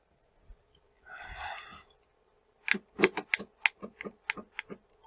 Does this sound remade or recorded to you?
recorded